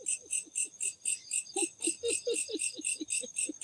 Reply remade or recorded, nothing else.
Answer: recorded